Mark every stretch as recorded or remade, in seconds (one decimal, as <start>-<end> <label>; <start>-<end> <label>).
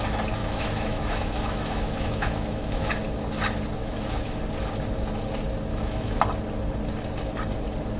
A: 0.0-0.4 recorded; 0.4-2.9 remade; 2.9-3.8 recorded; 3.8-4.4 remade; 4.4-5.7 recorded; 5.7-6.2 remade; 6.2-8.0 recorded